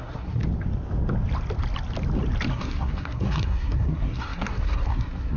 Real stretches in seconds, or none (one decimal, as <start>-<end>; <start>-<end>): 0.4-2.5